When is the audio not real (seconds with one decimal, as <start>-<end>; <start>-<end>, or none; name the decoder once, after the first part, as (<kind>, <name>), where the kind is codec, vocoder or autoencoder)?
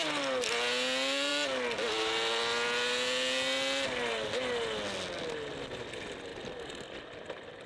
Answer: none